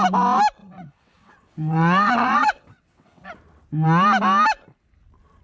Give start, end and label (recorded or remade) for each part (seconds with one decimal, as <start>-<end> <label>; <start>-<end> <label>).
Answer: 0.0-0.6 recorded; 0.6-3.3 remade; 3.3-5.4 recorded